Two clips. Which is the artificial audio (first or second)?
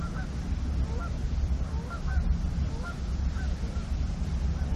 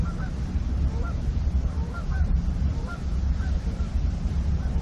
second